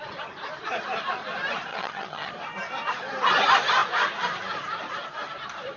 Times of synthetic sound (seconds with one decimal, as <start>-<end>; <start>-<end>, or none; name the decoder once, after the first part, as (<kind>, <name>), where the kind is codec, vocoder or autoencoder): 1.7-2.3 (vocoder, HiFi-GAN)